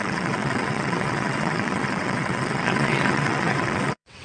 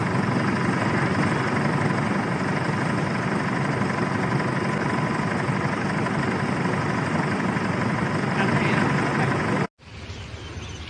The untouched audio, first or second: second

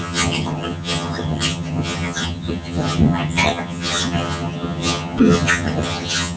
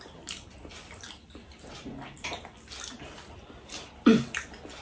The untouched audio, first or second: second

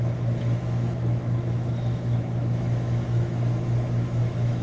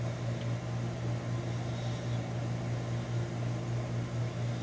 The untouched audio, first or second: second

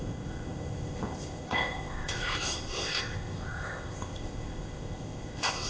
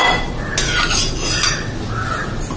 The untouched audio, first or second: second